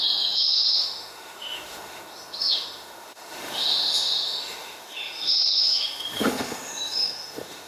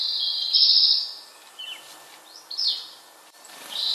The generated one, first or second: first